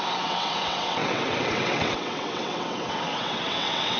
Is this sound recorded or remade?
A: remade